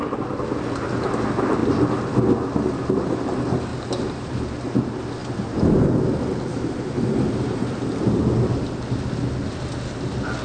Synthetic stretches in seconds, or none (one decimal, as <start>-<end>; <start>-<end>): 3.7-4.3; 5.2-5.7; 6.5-8.1